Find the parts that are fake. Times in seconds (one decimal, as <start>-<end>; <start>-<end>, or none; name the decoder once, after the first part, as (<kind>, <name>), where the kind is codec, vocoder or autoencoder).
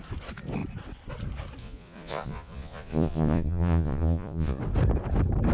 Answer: 1.6-4.6 (vocoder, Vocos)